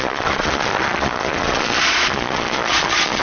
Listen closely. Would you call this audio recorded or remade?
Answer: remade